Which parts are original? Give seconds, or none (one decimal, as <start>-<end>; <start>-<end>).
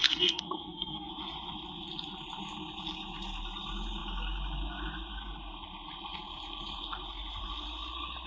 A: 1.1-8.3